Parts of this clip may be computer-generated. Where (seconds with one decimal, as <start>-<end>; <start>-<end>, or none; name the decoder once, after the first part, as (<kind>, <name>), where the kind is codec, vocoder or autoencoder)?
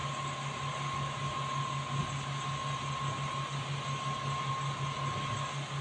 none